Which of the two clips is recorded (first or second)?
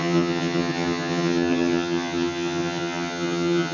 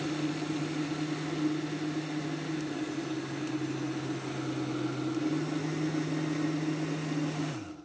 second